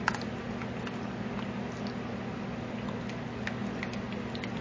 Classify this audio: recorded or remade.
recorded